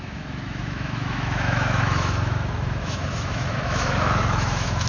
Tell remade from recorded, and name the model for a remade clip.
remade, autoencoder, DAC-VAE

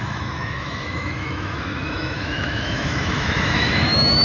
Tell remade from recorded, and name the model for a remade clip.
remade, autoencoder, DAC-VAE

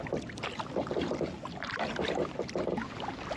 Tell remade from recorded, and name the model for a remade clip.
recorded